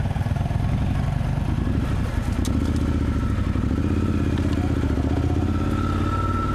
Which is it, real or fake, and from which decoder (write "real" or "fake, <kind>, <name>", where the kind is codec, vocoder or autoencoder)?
real